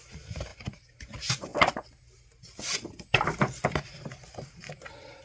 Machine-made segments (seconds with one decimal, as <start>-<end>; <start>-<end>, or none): none